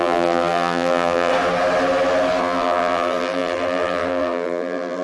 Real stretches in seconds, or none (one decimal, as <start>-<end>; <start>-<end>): 1.3-2.4